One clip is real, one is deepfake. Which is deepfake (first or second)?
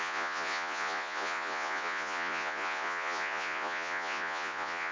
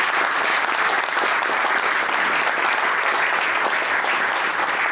first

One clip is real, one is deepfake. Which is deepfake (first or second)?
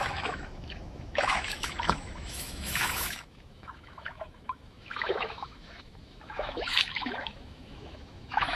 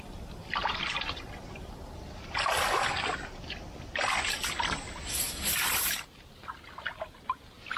first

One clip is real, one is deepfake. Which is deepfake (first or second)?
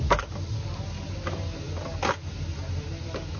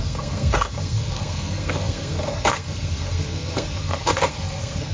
second